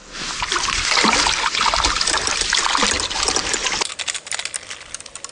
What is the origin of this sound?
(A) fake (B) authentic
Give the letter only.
B